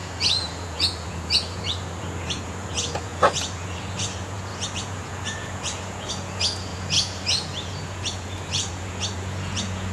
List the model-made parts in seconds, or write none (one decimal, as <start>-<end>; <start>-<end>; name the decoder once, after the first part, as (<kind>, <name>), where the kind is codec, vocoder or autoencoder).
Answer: 0.0-9.9 (vocoder, Vocos)